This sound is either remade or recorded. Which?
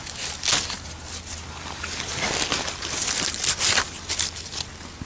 recorded